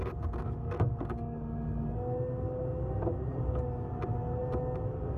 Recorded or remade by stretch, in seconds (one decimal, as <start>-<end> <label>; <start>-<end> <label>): 0.0-0.6 recorded; 0.6-1.9 remade; 1.9-5.2 recorded